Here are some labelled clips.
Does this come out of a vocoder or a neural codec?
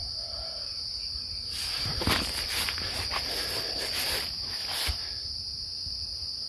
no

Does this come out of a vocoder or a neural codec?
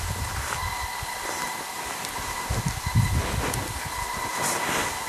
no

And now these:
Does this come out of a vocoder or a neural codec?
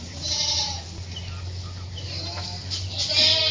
no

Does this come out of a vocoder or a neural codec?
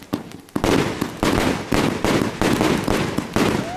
no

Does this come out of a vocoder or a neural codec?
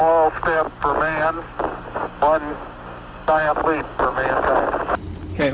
no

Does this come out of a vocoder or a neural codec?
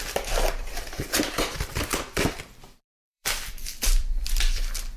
yes